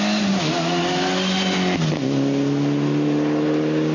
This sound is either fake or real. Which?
real